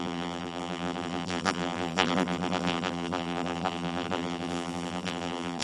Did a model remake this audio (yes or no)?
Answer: yes